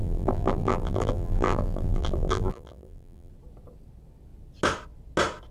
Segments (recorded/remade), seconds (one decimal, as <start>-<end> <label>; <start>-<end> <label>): 0.0-3.3 remade; 3.3-5.5 recorded